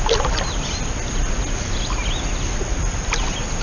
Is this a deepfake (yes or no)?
no